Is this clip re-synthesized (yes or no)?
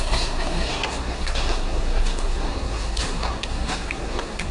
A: yes